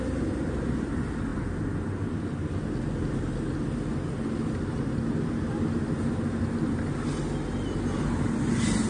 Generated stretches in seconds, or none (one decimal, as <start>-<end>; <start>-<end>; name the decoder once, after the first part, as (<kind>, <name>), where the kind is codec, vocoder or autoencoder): none